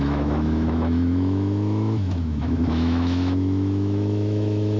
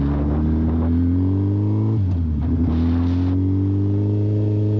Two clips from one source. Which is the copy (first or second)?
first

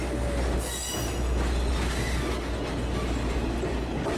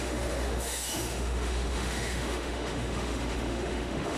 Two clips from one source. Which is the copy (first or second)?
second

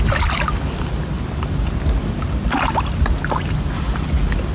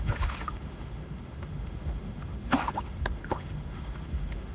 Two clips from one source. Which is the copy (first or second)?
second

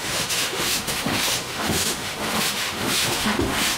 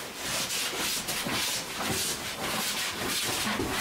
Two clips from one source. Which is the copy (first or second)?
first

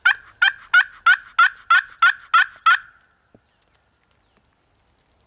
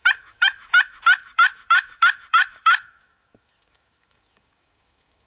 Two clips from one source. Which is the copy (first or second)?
second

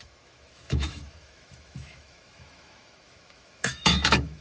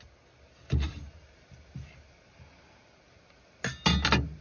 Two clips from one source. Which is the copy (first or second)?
first